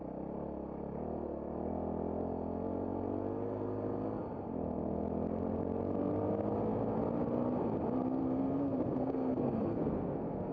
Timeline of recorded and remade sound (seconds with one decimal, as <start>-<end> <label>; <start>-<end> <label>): 0.0-8.2 recorded; 8.2-10.5 remade